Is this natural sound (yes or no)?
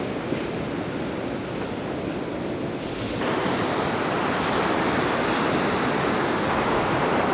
yes